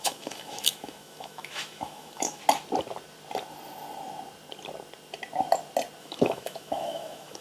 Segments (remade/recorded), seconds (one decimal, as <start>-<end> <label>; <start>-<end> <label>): 0.0-2.4 remade; 2.4-6.0 recorded; 6.0-7.4 remade